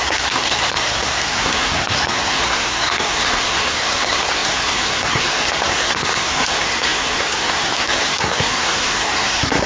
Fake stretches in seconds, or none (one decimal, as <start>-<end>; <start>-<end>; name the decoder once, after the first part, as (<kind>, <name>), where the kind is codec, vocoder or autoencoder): 0.0-9.7 (codec, SNAC)